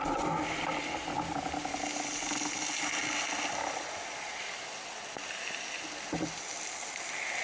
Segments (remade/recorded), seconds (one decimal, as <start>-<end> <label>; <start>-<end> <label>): 0.0-7.4 recorded